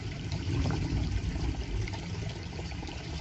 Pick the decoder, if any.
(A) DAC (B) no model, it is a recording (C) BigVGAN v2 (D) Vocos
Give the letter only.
C